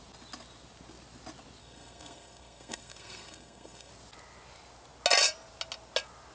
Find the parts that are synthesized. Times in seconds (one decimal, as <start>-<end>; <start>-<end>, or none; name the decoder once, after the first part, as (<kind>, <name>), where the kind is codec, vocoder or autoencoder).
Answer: 1.6-3.9 (codec, SNAC)